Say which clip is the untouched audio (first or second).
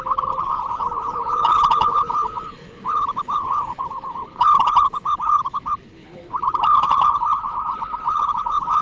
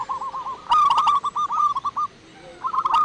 second